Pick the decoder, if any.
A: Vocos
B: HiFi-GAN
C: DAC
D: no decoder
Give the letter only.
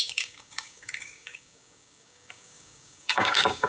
C